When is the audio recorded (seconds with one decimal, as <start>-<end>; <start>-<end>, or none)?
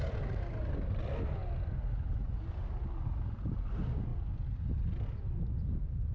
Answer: 0.0-6.1